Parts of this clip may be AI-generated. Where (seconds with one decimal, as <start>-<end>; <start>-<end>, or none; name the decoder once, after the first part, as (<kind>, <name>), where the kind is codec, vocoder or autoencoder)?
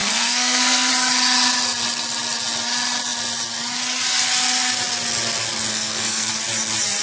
0.0-0.9 (codec, SNAC); 5.7-6.3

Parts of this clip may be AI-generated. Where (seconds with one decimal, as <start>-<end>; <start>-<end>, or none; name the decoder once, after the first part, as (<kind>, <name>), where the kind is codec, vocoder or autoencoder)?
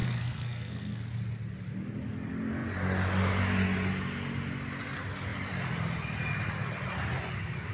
0.0-1.0 (codec, SNAC)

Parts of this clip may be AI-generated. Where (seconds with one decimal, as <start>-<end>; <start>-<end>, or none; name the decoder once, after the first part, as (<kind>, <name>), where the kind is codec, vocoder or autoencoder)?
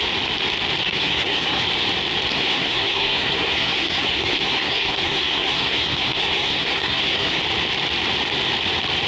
0.8-1.6 (codec, SNAC); 2.3-7.4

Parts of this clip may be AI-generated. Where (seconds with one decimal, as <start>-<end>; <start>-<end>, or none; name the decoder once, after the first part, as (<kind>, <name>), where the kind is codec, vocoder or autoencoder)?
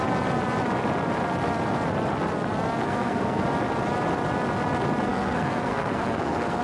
2.8-3.4 (codec, SNAC); 5.1-6.6